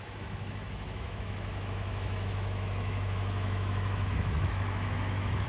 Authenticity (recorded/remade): remade